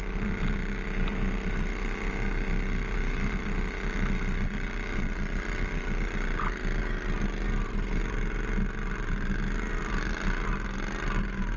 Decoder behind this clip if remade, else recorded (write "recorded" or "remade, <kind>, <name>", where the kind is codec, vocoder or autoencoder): recorded